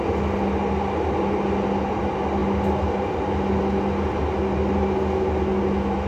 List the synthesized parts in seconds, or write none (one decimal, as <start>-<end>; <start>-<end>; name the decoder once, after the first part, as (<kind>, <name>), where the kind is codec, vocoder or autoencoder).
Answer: none

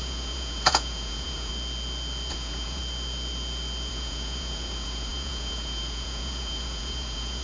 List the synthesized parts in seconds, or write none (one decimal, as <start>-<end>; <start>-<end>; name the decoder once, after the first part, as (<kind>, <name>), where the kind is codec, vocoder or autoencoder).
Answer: 0.0-1.5 (vocoder, Vocos); 2.3-2.8; 3.9-7.4

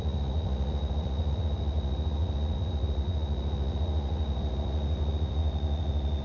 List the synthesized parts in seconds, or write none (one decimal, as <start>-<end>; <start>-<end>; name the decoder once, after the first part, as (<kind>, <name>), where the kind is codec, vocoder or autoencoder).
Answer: 0.0-6.2 (vocoder, Vocos)

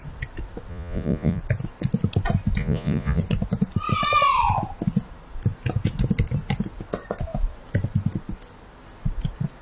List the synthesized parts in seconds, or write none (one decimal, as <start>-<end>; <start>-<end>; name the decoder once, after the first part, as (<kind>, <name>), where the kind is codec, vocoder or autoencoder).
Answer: 0.7-1.4 (vocoder, Vocos); 2.6-3.2

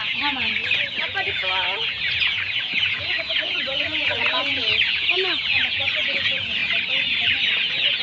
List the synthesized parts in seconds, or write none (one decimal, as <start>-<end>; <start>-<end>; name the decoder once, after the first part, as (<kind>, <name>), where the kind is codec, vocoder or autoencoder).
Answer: 0.0-6.6 (vocoder, Vocos); 7.5-8.0